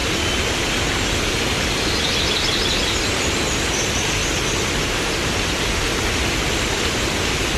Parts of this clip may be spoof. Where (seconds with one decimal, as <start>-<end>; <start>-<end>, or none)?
none